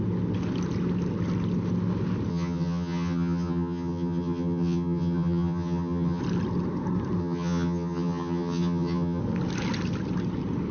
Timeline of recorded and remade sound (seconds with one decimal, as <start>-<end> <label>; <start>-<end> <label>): 0.0-2.3 recorded; 2.3-6.2 remade; 6.2-7.2 recorded; 7.2-9.2 remade; 9.2-10.7 recorded